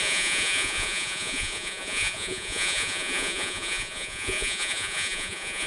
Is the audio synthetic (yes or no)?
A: yes